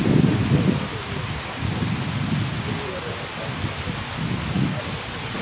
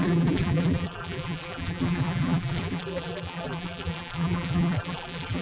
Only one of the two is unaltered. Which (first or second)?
first